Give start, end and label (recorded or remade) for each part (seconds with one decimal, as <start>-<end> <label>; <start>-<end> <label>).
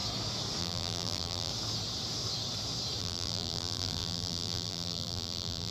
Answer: 0.0-0.6 recorded; 0.6-1.5 remade; 1.5-3.0 recorded; 3.0-5.7 remade